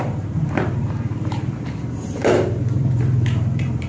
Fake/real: fake